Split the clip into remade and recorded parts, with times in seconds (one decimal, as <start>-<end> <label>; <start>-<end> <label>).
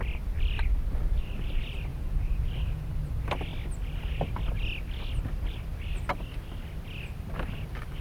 0.0-1.9 recorded; 1.9-2.9 remade; 2.9-8.0 recorded